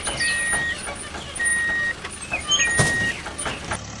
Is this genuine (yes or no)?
yes